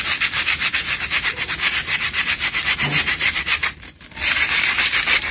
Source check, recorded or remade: remade